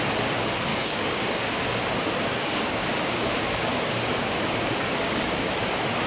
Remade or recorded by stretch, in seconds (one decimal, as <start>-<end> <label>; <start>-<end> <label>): 0.0-0.7 recorded; 0.7-1.8 remade; 1.8-2.3 recorded; 2.3-5.5 remade; 5.5-6.1 recorded